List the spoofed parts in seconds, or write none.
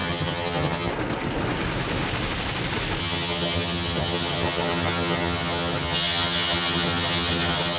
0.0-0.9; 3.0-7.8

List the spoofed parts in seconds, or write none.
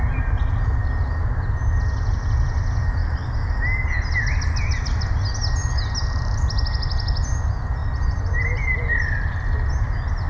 none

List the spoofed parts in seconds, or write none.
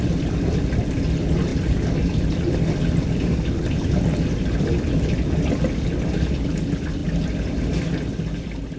none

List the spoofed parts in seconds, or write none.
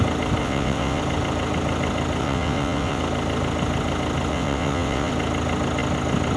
0.4-1.0; 2.2-3.0; 4.3-5.1